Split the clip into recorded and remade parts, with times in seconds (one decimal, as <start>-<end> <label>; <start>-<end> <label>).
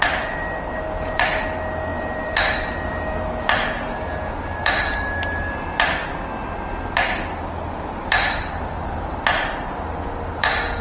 0.0-1.9 recorded; 1.9-2.4 remade; 2.4-10.8 recorded